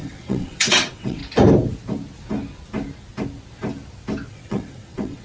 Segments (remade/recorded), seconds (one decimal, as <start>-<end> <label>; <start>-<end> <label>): 0.0-1.2 remade; 1.2-4.3 recorded; 4.3-5.2 remade

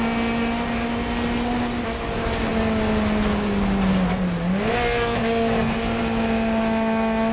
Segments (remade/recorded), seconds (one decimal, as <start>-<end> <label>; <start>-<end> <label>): 0.0-7.3 recorded

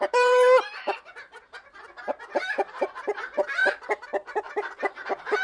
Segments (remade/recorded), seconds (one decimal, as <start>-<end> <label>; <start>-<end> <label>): 0.0-1.1 remade; 1.1-2.7 recorded; 2.7-5.4 remade